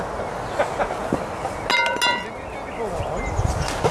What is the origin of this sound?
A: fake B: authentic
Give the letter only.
B